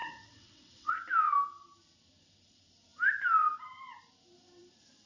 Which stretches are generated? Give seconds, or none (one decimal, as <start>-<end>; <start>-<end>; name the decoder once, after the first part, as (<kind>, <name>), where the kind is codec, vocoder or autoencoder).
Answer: 0.0-0.9 (vocoder, WaveNeXt)